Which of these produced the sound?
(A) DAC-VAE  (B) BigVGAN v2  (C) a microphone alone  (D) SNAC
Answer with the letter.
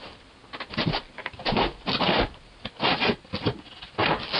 C